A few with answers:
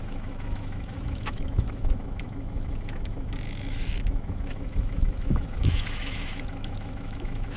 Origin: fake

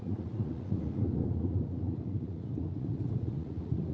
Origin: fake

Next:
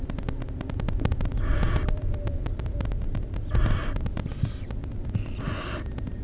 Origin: real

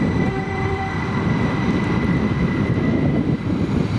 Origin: fake